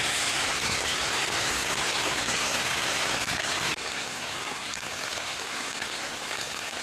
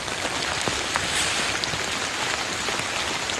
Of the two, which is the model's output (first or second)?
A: first